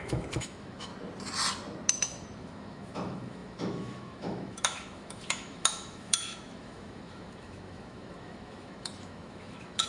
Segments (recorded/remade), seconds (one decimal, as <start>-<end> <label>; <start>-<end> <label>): 0.0-0.9 remade; 0.9-1.9 recorded; 1.9-9.9 remade